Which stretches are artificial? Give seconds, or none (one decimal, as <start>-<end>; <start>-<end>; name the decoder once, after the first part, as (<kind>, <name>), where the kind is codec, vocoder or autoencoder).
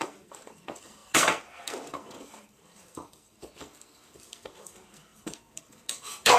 0.0-6.4 (codec, SNAC)